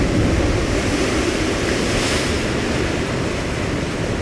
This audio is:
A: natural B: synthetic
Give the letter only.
A